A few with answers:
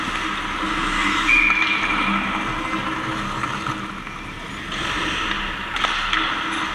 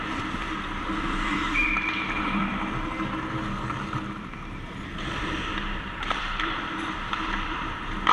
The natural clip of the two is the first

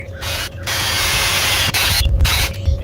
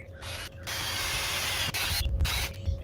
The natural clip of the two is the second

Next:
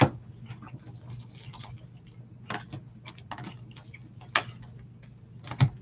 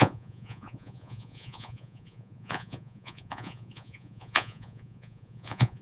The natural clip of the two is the first